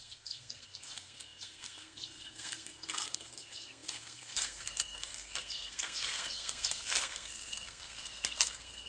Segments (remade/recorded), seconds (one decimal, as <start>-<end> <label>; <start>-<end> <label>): 0.0-8.9 remade